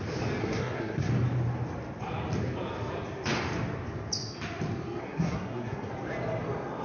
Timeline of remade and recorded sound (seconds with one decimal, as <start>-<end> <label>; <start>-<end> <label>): 0.0-0.4 recorded; 0.4-1.1 remade; 1.1-5.0 recorded; 5.0-5.9 remade; 5.9-6.8 recorded